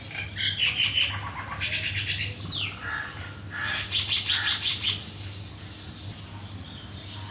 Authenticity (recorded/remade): remade